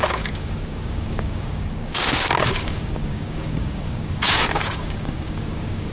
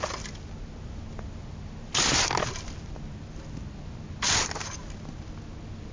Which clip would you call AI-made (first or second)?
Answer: first